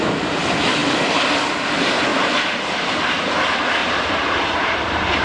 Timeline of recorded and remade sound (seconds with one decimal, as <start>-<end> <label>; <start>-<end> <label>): 0.0-2.1 recorded; 2.1-3.3 remade; 3.3-3.8 recorded; 3.8-5.2 remade